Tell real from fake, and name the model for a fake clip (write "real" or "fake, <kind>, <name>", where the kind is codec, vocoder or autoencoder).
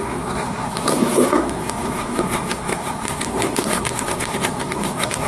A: fake, codec, SNAC